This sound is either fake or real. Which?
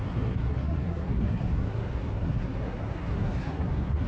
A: fake